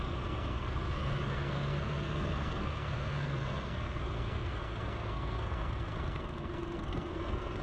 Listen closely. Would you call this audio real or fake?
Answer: fake